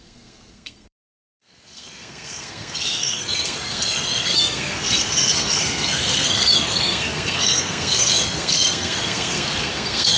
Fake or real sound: fake